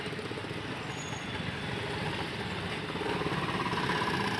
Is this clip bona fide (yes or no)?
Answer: yes